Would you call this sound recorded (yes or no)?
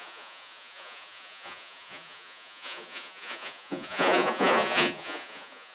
no